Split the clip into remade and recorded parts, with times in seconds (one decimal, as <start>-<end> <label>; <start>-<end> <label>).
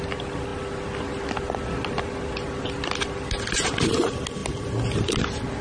0.0-5.6 recorded